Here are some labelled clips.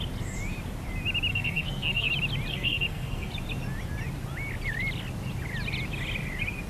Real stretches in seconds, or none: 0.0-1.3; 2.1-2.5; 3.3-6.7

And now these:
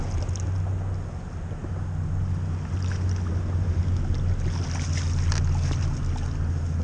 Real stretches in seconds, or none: 0.0-6.8